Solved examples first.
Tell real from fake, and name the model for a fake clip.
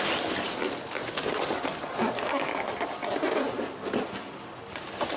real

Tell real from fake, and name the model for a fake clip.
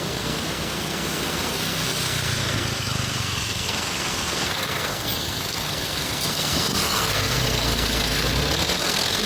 fake, codec, SNAC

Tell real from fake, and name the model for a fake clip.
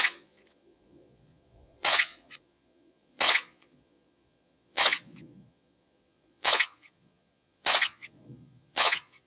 fake, vocoder, Vocos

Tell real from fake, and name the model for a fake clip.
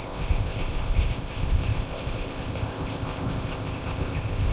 fake, codec, ZipCodec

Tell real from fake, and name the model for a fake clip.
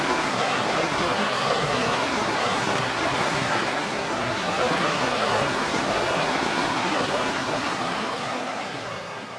fake, codec, SNAC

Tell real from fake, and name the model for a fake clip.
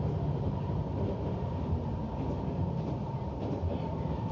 real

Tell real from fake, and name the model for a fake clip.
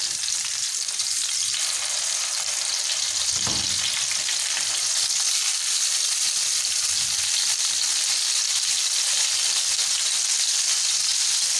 real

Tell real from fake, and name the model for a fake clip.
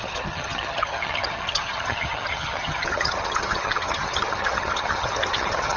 fake, vocoder, HiFi-GAN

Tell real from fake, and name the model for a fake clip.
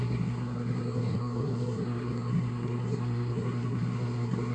fake, codec, SNAC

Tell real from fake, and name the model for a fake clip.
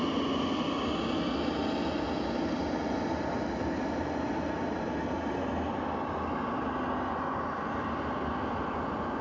real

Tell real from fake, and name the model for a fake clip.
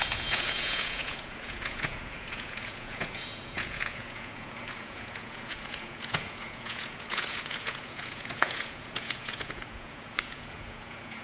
fake, vocoder, Vocos